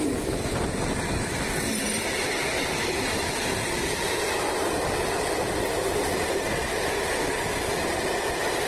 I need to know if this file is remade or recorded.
recorded